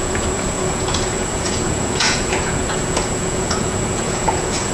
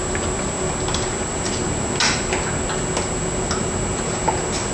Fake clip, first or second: first